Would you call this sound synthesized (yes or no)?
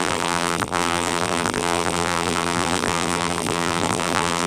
yes